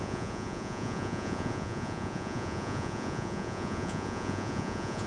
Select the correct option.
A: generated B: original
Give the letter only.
A